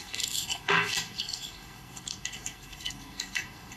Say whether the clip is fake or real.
fake